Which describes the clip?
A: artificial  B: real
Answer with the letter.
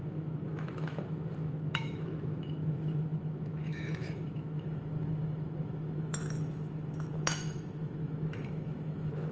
A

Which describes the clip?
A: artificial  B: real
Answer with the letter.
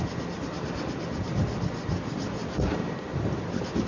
B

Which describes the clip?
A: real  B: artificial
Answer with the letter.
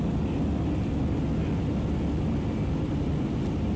A